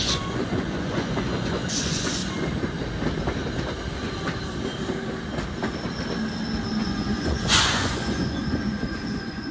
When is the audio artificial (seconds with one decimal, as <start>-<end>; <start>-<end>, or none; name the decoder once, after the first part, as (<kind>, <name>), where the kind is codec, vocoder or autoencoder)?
0.0-2.2 (vocoder, Vocos); 6.8-9.5